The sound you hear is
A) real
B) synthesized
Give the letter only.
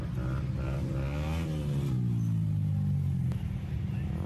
A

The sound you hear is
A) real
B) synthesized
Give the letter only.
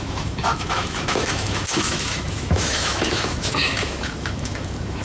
B